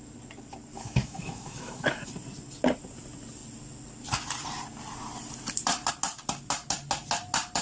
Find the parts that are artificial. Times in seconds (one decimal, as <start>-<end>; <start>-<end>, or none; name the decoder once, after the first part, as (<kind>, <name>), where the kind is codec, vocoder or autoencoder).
0.7-2.1 (autoencoder, DAC-VAE)